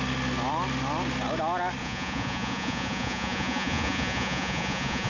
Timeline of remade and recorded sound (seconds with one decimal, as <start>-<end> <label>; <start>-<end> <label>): 0.0-1.8 recorded; 1.8-5.1 remade